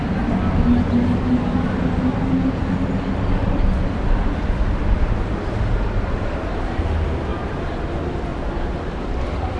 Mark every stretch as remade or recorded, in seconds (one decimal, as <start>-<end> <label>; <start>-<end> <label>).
0.0-2.6 recorded; 2.6-4.8 remade; 4.8-8.3 recorded; 8.3-9.6 remade